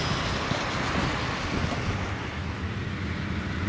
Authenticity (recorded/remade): recorded